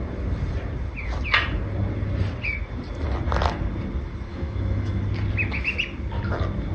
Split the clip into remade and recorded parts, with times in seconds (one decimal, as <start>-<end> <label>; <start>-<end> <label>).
0.0-4.3 recorded; 4.3-5.0 remade; 5.0-6.7 recorded